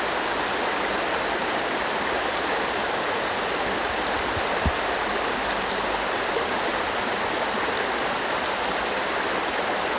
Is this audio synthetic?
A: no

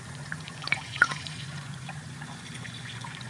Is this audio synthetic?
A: yes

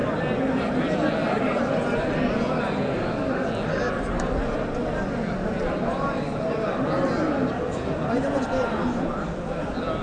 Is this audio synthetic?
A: no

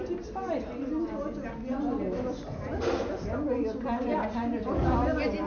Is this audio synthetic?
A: no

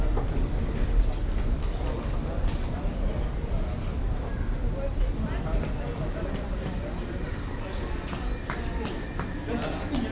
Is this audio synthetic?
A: no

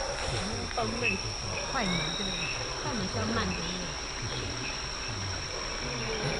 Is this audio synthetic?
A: no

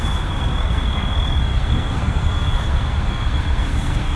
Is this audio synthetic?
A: yes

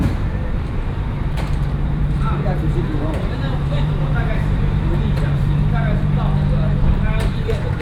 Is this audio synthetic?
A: yes